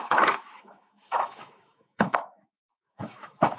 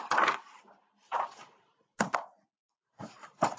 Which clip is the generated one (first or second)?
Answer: first